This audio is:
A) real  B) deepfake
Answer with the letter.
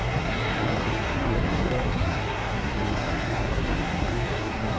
B